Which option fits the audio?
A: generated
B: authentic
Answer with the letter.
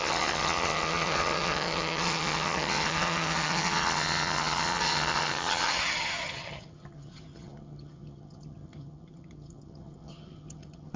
A